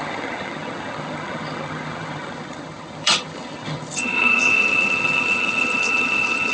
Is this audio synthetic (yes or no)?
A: yes